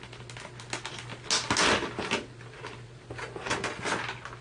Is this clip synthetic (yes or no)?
no